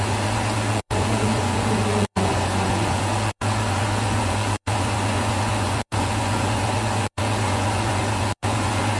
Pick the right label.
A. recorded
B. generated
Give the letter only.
B